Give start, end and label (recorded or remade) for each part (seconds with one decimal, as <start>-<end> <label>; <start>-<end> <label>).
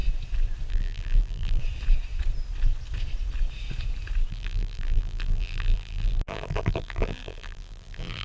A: 0.0-0.7 recorded; 0.7-1.6 remade; 1.6-4.3 recorded; 4.3-8.2 remade